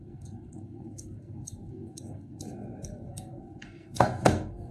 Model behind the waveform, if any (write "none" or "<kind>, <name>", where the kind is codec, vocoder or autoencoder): codec, SNAC